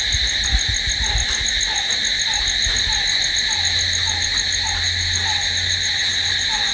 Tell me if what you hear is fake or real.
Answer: real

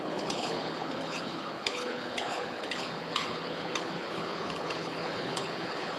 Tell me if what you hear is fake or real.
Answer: fake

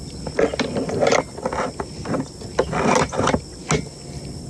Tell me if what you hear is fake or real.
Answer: real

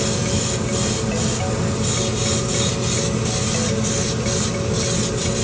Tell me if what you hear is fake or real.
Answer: real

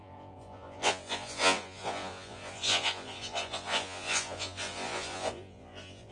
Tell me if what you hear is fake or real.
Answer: fake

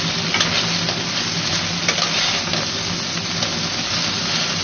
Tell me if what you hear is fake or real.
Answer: real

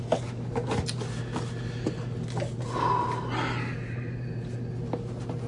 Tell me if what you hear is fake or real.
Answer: real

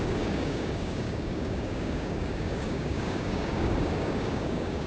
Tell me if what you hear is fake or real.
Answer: fake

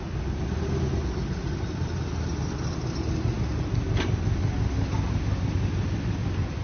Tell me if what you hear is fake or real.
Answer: real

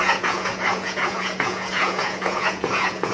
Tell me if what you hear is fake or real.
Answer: fake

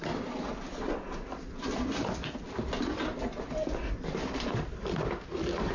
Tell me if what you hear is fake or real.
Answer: real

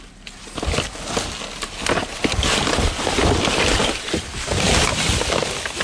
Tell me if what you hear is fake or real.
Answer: real